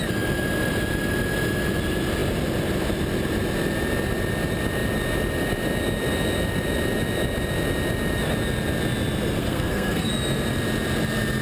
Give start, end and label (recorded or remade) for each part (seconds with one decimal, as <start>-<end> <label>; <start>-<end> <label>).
0.0-9.4 recorded; 9.4-10.1 remade; 10.1-11.4 recorded